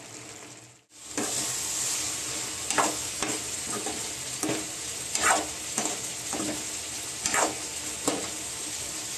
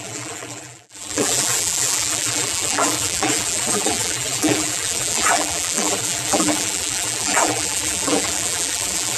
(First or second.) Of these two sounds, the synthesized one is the second